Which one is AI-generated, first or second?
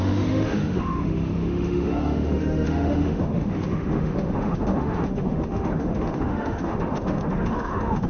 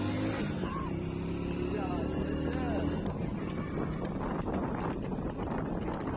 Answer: first